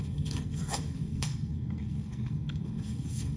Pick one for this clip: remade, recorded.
remade